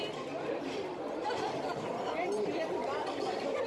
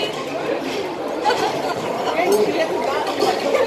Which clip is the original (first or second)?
first